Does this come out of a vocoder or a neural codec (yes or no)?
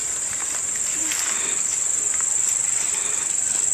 no